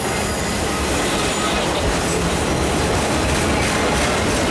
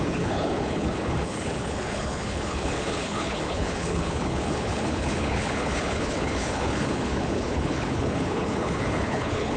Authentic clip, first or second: first